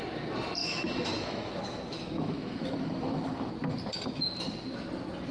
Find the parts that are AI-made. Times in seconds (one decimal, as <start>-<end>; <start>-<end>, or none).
0.6-3.5